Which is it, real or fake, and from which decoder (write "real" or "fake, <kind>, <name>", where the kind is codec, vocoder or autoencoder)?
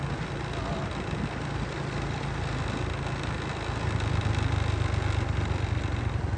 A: real